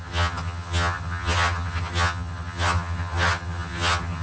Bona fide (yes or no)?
no